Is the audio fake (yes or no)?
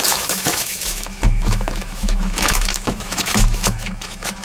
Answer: yes